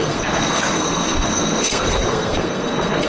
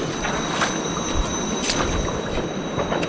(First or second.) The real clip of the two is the second